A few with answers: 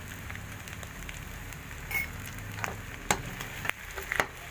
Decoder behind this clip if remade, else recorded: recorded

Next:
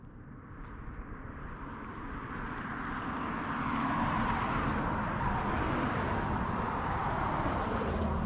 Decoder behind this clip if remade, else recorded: remade, vocoder, BigVGAN v2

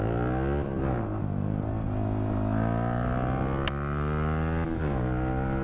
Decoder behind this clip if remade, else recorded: recorded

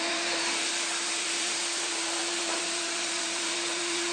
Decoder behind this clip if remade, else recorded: remade, vocoder, BigVGAN v2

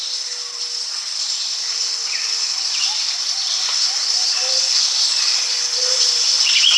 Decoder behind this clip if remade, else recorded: remade, vocoder, BigVGAN v2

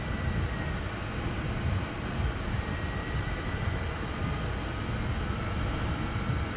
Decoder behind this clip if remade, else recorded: recorded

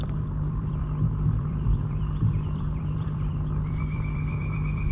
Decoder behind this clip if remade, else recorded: remade, vocoder, BigVGAN v2